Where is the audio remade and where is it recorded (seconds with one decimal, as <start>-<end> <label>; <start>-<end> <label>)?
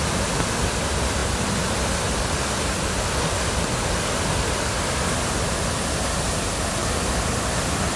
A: 0.0-8.0 recorded